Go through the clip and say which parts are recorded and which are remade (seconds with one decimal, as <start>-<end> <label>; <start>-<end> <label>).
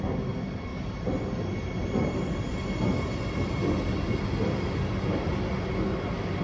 0.0-6.4 recorded